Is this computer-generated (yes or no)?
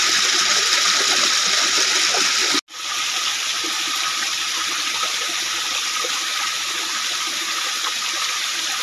no